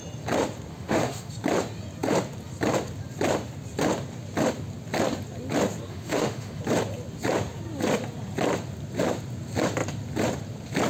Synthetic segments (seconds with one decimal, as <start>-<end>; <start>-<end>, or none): 0.7-1.3; 5.9-6.6